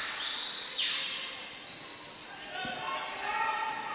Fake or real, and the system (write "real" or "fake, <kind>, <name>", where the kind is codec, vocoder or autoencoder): real